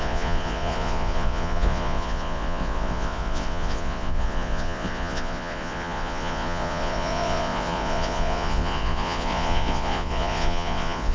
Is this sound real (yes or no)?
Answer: no